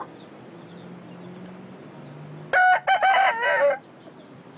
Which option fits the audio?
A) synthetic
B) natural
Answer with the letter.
B